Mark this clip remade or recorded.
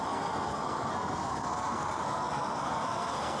remade